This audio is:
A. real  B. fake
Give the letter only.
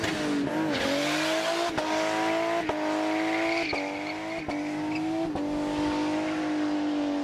A